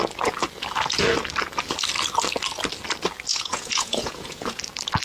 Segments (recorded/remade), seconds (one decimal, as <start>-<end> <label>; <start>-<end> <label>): 0.0-3.3 recorded; 3.3-4.6 remade; 4.6-5.0 recorded